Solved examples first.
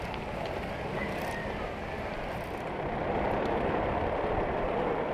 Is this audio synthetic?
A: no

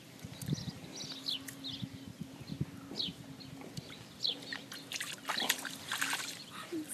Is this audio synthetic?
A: no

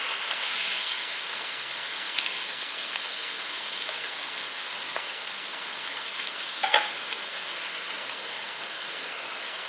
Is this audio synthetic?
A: yes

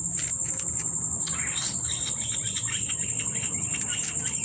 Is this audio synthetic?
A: no